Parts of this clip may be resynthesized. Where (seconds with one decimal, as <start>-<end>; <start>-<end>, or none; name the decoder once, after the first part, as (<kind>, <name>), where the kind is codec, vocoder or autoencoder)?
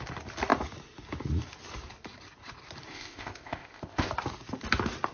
2.9-4.1 (codec, ZipCodec)